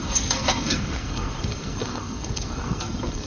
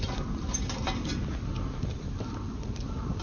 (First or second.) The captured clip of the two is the second